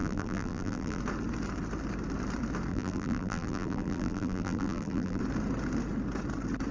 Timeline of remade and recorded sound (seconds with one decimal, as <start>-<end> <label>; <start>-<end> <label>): 0.0-1.0 remade; 1.0-2.7 recorded; 2.7-5.2 remade; 5.2-6.7 recorded